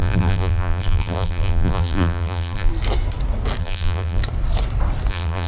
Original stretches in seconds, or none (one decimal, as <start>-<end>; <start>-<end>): 2.7-3.6; 4.2-5.1